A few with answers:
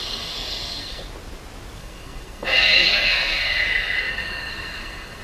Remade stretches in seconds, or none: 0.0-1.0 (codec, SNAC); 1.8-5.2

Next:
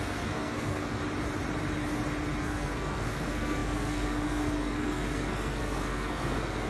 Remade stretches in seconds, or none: 0.0-1.0 (codec, SNAC); 2.4-6.7

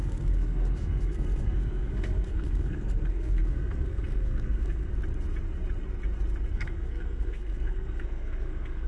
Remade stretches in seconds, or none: 0.0-4.9 (codec, SNAC); 6.5-8.9

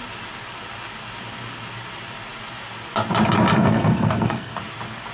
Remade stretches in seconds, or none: 3.5-4.6 (codec, SNAC)

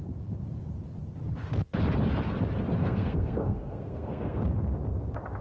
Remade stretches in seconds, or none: 2.8-4.4 (codec, SNAC)

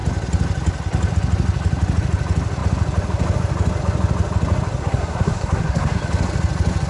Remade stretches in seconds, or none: 4.8-6.0 (codec, SNAC)